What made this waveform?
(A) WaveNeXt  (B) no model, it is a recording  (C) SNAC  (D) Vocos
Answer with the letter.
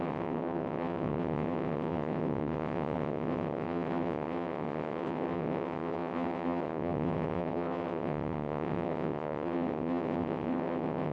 A